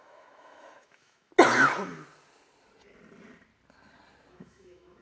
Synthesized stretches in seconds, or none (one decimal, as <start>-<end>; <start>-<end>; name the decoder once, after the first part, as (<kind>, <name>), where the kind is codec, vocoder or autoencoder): 0.0-1.3 (autoencoder, DAC-VAE); 4.3-5.0